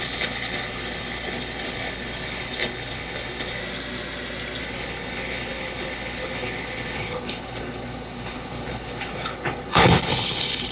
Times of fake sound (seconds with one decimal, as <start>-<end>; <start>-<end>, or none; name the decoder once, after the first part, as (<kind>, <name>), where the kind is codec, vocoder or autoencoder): 0.0-3.6 (codec, HILCodec); 4.6-10.7